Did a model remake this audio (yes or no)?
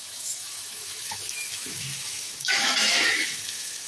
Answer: yes